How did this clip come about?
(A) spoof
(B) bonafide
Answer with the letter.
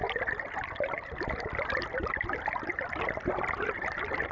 B